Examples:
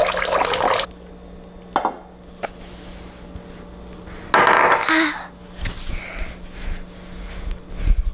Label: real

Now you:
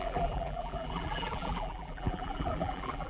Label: fake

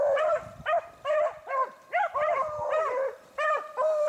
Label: fake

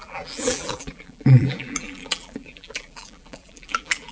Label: fake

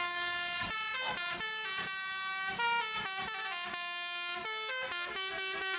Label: real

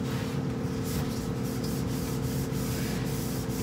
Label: real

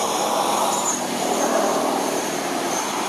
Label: fake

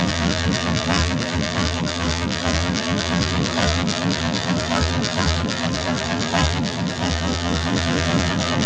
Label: fake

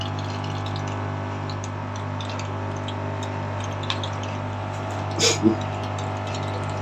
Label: real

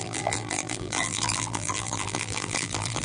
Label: fake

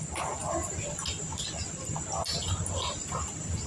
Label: real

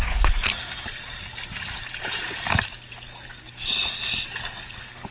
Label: real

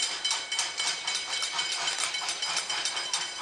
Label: real